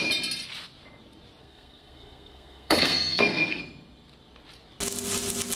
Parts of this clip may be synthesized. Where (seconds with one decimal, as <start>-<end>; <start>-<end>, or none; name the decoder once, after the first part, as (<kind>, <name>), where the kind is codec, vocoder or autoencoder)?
1.4-3.6 (codec, SNAC)